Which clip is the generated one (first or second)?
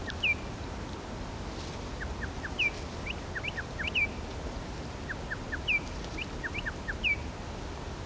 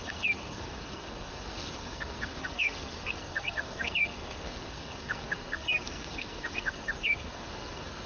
second